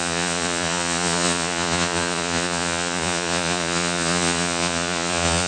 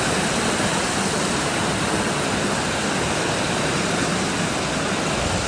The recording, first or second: second